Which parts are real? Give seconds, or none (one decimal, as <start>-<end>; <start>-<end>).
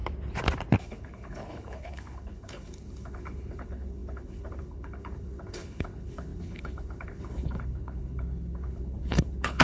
0.0-0.8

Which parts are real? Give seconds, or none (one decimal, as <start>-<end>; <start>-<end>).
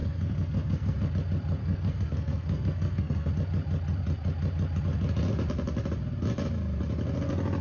1.1-1.6; 3.3-7.6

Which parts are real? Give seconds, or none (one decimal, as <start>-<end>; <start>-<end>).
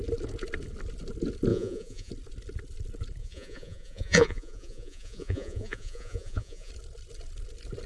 0.0-1.5; 2.1-3.2; 6.7-7.9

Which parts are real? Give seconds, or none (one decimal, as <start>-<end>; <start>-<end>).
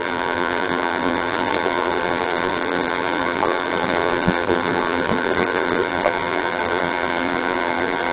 none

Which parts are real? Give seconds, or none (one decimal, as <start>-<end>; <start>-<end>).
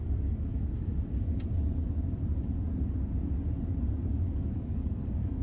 0.9-4.1